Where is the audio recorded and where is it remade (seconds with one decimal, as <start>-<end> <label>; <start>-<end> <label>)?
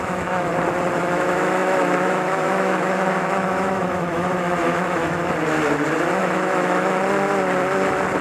0.0-0.5 remade; 0.5-1.0 recorded; 1.0-5.2 remade; 5.2-6.2 recorded; 6.2-7.0 remade; 7.0-8.2 recorded